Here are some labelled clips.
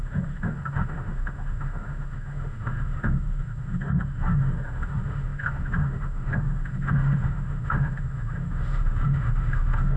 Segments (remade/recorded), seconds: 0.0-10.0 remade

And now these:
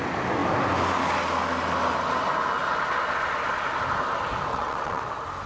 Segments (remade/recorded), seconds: 0.0-4.5 recorded; 4.5-5.0 remade; 5.0-5.5 recorded